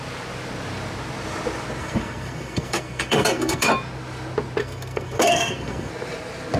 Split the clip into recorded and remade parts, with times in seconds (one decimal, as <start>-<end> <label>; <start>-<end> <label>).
0.0-1.8 recorded; 1.8-3.7 remade; 3.7-4.6 recorded; 4.6-5.9 remade; 5.9-6.6 recorded